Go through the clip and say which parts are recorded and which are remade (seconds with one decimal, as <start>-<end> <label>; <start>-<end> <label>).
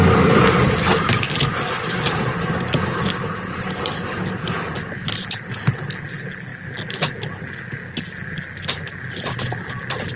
0.0-10.2 recorded